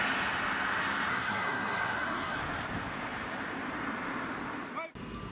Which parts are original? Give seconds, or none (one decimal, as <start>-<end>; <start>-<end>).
0.0-1.1; 2.4-5.3